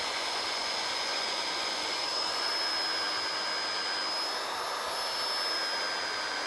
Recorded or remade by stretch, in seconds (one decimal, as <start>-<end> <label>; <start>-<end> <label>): 0.0-2.5 remade; 2.5-6.5 recorded